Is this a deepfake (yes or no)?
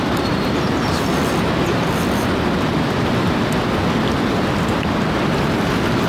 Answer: no